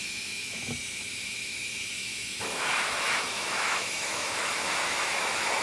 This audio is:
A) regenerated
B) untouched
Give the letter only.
A